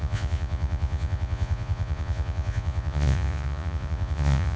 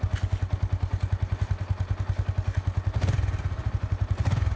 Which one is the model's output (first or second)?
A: first